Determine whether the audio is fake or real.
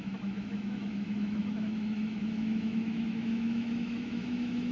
fake